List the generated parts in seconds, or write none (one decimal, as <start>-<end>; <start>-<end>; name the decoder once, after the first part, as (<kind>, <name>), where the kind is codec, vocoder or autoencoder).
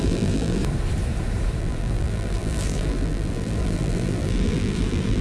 0.0-0.6 (vocoder, BigVGAN v2); 1.6-5.2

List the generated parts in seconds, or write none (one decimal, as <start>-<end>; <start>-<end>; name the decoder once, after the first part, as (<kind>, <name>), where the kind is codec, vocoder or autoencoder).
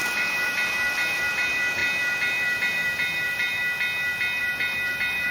0.0-3.6 (vocoder, BigVGAN v2); 4.4-5.3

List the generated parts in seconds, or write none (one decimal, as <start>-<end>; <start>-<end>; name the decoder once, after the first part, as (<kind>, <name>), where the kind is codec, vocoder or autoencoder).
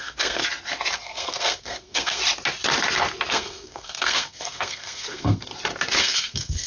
0.0-0.4 (codec, SNAC); 1.0-2.2; 3.3-5.5; 6.0-6.7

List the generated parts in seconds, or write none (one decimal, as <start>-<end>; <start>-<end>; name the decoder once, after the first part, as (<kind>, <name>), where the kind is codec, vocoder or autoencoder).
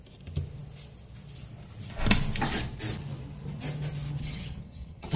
4.2-5.2 (vocoder, HiFi-GAN)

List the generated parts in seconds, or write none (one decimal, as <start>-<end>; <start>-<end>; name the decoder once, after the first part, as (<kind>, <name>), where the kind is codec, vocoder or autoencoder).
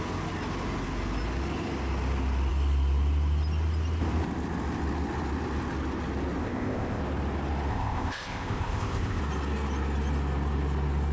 6.4-7.0 (codec, ZipCodec); 7.7-9.2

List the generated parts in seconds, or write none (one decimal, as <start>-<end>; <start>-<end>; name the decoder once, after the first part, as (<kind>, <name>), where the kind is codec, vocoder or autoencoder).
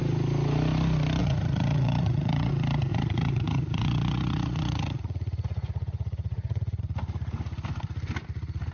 1.2-2.5 (vocoder, Vocos); 2.9-6.8